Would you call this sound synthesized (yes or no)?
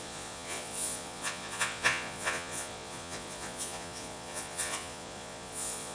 yes